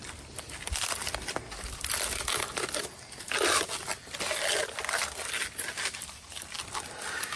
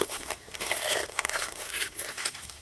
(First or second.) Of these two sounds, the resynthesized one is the second